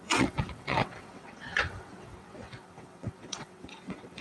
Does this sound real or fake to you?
fake